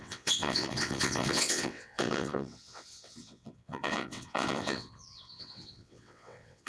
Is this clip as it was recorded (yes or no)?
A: no